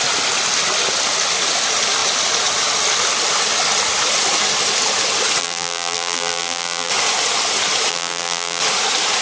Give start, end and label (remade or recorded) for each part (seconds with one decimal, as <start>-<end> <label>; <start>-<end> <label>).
0.0-5.4 recorded; 5.4-6.9 remade; 6.9-7.9 recorded; 7.9-8.6 remade; 8.6-9.2 recorded